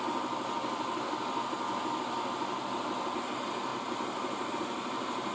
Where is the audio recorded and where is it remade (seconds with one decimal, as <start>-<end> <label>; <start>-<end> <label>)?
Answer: 0.0-5.3 recorded